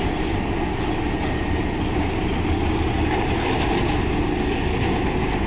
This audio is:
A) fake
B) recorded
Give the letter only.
B